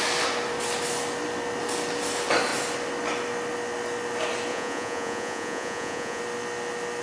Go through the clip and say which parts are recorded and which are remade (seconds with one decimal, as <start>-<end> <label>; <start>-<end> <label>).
0.0-4.5 recorded; 4.5-6.2 remade; 6.2-7.0 recorded